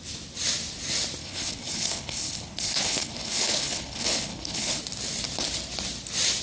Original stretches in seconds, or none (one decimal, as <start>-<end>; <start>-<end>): 0.0-1.2; 4.8-6.4